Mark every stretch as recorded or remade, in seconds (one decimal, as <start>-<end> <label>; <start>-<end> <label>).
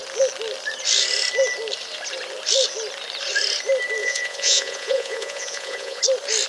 0.0-4.0 recorded; 4.0-6.0 remade; 6.0-6.5 recorded